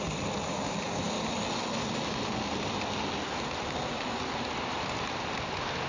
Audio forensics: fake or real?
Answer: real